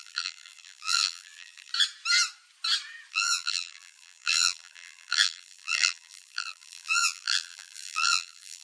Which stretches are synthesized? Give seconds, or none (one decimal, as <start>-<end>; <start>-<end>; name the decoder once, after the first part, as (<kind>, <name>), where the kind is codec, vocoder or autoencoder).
0.0-1.7 (vocoder, BigVGAN v2); 3.1-8.6

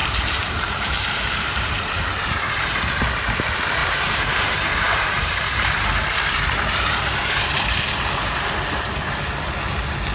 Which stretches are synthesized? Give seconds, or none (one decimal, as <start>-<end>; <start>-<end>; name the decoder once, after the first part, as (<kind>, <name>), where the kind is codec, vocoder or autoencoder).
0.0-2.8 (vocoder, BigVGAN v2); 3.8-8.5